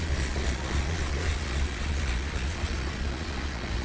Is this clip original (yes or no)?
no